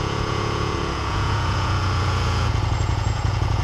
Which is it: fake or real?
fake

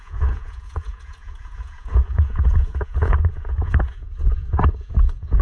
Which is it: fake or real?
fake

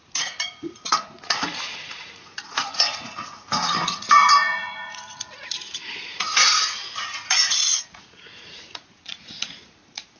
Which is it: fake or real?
fake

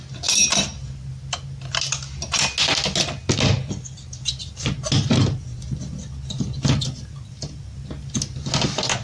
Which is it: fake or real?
real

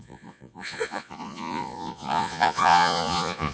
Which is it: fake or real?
fake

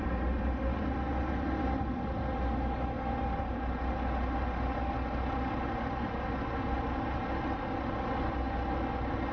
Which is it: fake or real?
real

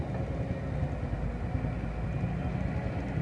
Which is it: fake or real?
real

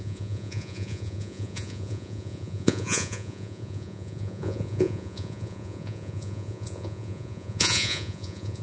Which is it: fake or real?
fake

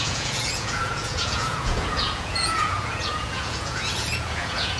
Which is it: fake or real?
fake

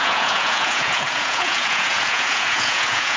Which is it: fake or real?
fake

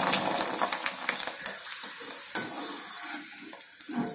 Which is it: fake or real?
real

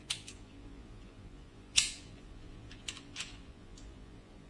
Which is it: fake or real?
fake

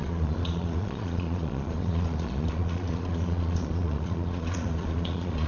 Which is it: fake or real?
fake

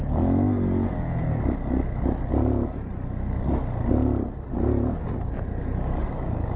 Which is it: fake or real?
real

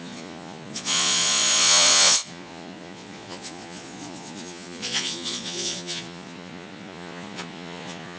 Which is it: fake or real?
fake